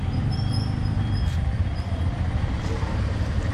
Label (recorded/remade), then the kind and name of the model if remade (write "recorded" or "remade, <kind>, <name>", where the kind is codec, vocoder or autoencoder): remade, vocoder, BigVGAN v2